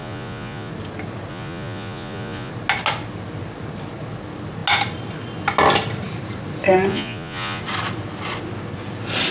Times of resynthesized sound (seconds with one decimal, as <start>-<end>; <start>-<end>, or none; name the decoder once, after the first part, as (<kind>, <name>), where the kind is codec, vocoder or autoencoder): 0.0-0.7 (vocoder, Vocos); 1.3-2.5; 6.9-7.6